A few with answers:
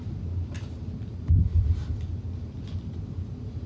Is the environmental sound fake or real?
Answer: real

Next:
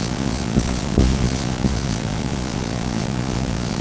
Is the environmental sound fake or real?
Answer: fake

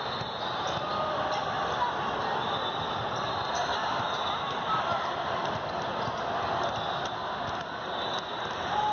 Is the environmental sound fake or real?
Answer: real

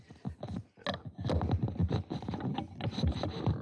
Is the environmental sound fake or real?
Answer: real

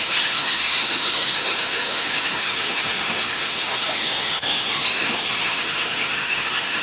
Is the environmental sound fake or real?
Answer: fake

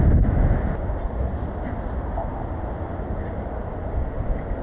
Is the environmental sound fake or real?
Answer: real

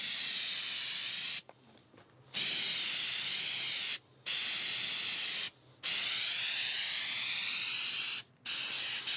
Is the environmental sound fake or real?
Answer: real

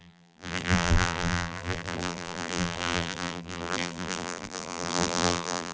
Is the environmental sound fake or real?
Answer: fake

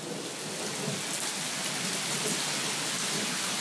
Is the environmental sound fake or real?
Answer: real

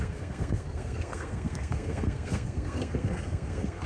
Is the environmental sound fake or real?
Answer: fake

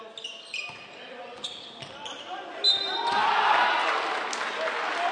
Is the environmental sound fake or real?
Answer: real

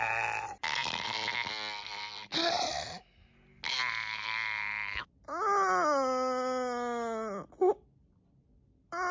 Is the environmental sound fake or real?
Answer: real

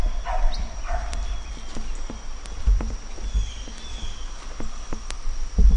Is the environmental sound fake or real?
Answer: real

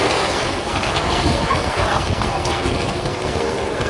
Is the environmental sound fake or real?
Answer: fake